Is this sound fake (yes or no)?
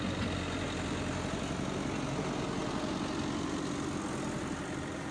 no